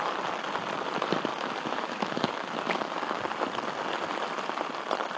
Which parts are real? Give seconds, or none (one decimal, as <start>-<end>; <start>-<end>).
0.0-1.3; 3.2-5.2